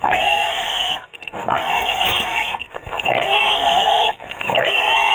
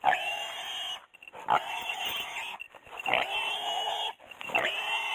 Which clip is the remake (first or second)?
first